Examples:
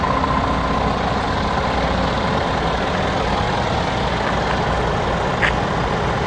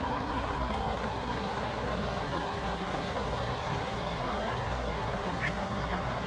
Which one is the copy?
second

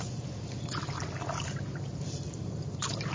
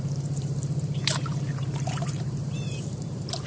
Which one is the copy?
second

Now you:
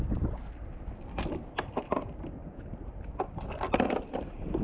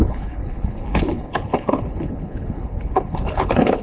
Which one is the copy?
second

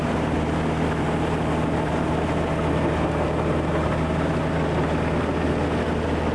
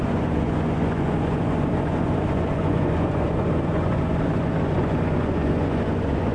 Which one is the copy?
second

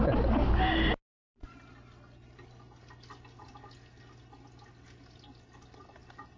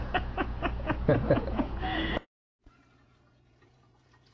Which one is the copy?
second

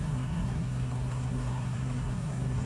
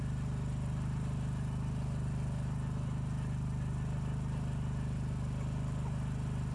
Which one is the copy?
first